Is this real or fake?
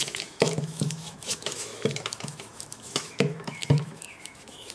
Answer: fake